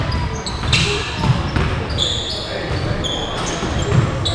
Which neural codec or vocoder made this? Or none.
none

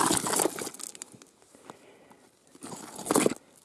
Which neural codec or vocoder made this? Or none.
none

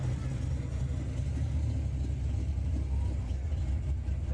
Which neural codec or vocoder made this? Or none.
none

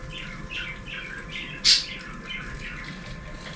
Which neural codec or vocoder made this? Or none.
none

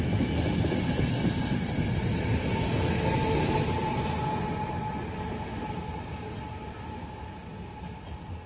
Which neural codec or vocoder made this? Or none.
none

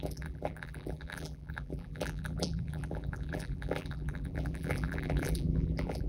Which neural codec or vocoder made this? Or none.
vocoder, BigVGAN v2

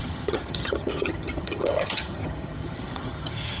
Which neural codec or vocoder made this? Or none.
vocoder, HiFi-GAN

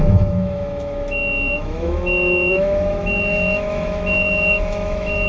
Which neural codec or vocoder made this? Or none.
autoencoder, DAC-VAE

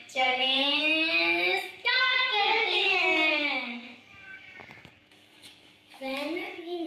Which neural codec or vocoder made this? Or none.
codec, DAC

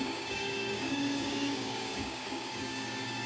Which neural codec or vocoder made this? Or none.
codec, DAC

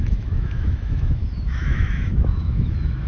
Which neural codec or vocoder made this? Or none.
autoencoder, DAC-VAE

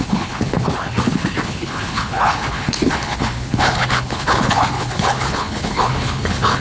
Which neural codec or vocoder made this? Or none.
codec, HILCodec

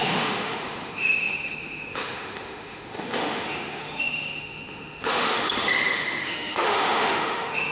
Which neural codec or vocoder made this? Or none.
autoencoder, DAC-VAE